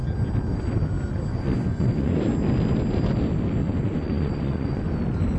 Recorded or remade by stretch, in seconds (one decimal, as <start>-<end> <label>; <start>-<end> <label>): 0.0-1.3 recorded; 1.3-2.3 remade; 2.3-3.6 recorded; 3.6-4.8 remade; 4.8-5.4 recorded